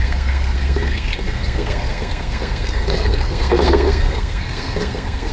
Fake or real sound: fake